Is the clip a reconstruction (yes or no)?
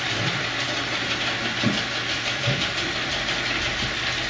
no